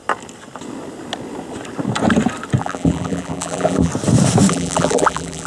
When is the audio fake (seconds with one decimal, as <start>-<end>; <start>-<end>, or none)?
2.6-3.9; 4.5-5.5